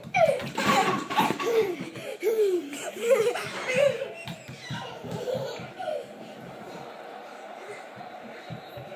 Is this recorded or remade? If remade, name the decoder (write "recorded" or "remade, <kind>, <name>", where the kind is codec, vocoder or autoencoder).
remade, vocoder, BigVGAN v2